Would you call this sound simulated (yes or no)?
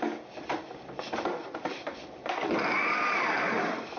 no